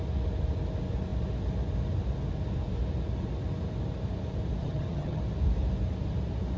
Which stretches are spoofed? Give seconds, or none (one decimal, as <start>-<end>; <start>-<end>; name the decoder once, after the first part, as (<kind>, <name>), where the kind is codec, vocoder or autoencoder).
4.6-5.2 (vocoder, HiFi-GAN)